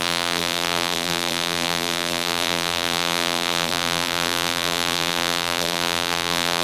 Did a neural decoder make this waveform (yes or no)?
yes